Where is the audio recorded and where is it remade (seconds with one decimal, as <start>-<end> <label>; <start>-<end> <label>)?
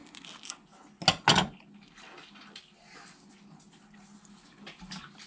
0.0-5.3 recorded